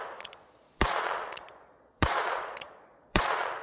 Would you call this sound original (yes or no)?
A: no